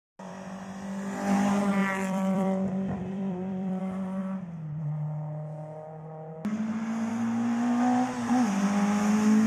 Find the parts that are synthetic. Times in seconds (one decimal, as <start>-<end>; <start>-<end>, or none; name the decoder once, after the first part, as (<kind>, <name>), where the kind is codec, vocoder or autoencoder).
1.8-3.8 (vocoder, BigVGAN v2)

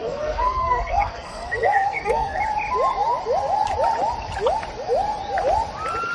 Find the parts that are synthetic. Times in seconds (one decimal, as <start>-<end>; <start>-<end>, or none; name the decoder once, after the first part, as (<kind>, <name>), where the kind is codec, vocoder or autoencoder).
0.0-2.4 (codec, SNAC)

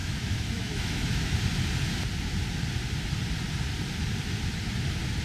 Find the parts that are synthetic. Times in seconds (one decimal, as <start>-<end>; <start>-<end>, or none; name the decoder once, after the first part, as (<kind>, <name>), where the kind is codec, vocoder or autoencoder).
0.0-1.4 (autoencoder, DAC-VAE)

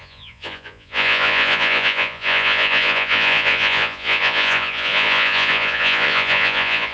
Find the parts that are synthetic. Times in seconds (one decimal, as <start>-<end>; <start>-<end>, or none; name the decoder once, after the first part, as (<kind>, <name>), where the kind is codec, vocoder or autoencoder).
0.0-6.9 (vocoder, Vocos)

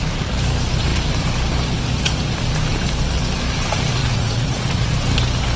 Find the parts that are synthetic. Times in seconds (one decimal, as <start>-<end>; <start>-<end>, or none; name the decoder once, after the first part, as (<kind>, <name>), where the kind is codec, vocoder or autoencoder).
4.0-4.9 (vocoder, Vocos)

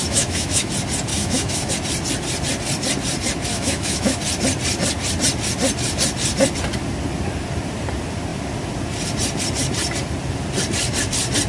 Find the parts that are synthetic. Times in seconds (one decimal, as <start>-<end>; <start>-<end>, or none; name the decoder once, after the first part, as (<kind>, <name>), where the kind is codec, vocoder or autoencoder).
0.0-0.7 (autoencoder, DAC-VAE); 1.1-1.7; 3.5-4.2

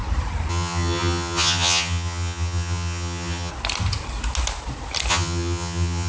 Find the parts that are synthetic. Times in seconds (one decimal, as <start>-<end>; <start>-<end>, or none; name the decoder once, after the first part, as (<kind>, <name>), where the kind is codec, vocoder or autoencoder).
0.5-3.5 (vocoder, HiFi-GAN); 5.1-6.1